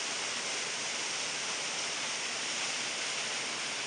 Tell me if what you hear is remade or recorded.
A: recorded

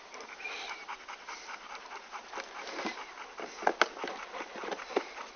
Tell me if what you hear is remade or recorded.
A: recorded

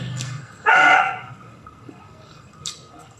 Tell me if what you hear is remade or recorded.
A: remade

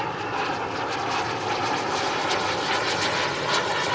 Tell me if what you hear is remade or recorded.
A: recorded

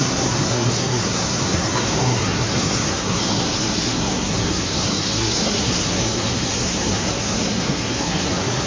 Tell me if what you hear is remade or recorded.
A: remade